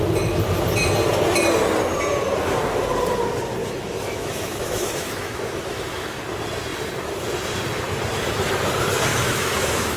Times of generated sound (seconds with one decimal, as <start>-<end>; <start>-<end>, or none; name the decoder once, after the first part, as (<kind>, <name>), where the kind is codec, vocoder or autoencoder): 3.6-6.2 (autoencoder, DAC-VAE); 9.1-10.0